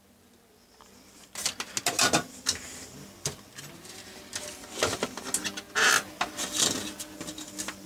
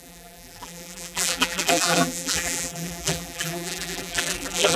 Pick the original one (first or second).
first